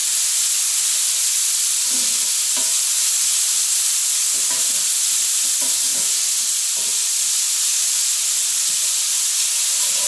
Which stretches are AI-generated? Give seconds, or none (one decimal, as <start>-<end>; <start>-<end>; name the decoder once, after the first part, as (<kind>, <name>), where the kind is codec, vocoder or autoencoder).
none